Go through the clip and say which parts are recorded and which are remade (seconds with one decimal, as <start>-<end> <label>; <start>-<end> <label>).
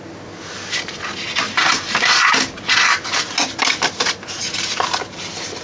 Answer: 0.0-5.6 recorded